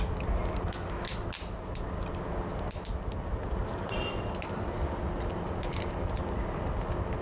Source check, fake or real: real